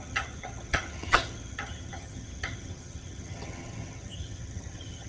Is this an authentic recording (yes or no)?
no